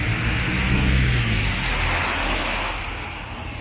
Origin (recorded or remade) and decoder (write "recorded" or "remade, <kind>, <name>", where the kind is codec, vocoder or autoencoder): recorded